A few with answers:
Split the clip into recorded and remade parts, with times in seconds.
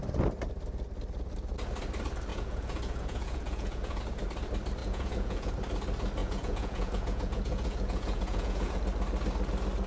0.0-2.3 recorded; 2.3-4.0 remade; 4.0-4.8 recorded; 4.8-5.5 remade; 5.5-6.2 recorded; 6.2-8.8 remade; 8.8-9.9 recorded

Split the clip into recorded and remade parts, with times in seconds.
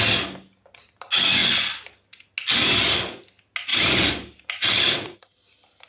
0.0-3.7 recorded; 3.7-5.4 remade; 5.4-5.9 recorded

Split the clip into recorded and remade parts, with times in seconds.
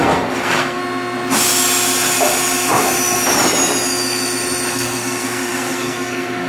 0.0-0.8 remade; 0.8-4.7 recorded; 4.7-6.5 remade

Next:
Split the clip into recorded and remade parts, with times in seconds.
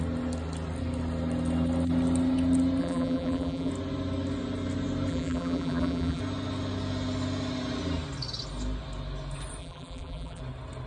0.0-2.8 recorded; 2.8-3.7 remade; 3.7-5.1 recorded; 5.1-6.2 remade; 6.2-9.6 recorded; 9.6-10.4 remade; 10.4-10.9 recorded